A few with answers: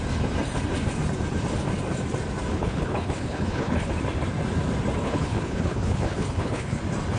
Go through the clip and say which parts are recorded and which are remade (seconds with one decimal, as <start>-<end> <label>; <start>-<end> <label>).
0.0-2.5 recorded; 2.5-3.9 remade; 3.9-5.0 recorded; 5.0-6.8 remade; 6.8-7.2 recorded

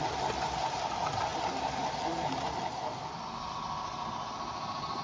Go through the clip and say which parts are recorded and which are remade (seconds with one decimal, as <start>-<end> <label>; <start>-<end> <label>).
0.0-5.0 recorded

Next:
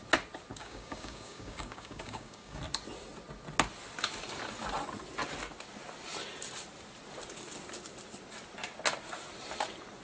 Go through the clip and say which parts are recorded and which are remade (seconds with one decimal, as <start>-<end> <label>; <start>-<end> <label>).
0.0-0.5 recorded; 0.5-2.6 remade; 2.6-10.0 recorded

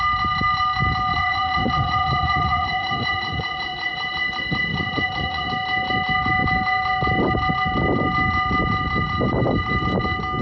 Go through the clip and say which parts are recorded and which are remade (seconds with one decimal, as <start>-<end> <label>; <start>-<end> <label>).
0.0-1.1 recorded; 1.1-4.1 remade; 4.1-4.7 recorded; 4.7-5.5 remade; 5.5-10.4 recorded

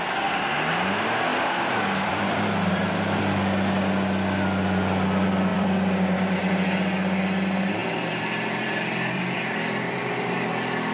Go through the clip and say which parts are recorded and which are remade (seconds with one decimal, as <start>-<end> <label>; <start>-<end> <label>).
0.0-1.3 recorded; 1.3-3.2 remade; 3.2-5.5 recorded; 5.5-6.4 remade; 6.4-7.8 recorded; 7.8-10.5 remade; 10.5-10.9 recorded

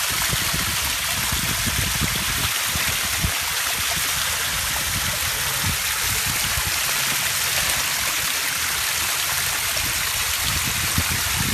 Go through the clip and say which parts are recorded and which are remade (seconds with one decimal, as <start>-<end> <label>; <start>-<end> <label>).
0.0-11.5 recorded

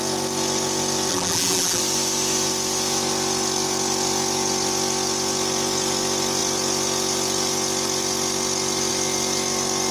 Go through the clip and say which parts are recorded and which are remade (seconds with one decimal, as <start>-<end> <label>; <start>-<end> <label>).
0.0-1.1 recorded; 1.1-1.8 remade; 1.8-9.9 recorded

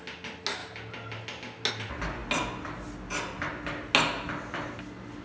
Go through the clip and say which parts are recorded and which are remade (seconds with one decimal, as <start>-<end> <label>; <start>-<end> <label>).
0.0-5.2 recorded